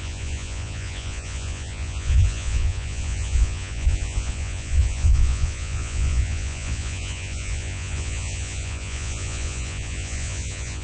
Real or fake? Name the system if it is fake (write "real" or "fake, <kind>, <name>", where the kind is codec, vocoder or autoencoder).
fake, vocoder, Vocos